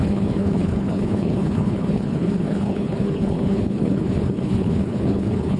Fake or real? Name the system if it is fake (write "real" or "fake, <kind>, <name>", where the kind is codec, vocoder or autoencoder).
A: fake, codec, HILCodec